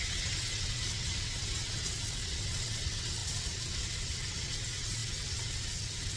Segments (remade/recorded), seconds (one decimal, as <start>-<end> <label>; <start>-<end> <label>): 0.0-6.2 remade